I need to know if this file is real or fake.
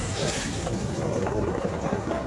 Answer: fake